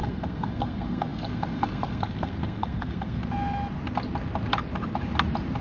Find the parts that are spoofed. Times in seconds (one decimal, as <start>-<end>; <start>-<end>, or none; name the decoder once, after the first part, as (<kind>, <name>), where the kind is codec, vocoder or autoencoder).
0.0-3.2 (codec, SNAC)